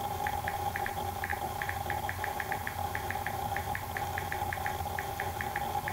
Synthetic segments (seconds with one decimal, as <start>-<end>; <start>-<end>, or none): 1.3-3.8